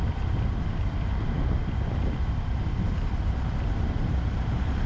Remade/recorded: recorded